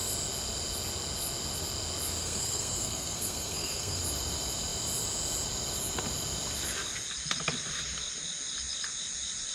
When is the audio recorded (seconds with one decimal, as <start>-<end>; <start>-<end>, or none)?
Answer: 0.0-2.2; 4.0-9.5